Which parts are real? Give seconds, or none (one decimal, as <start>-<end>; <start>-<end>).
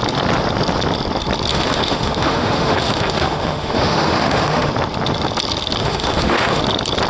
0.0-1.5; 4.7-5.8; 6.6-7.1